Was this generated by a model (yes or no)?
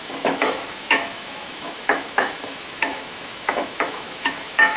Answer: yes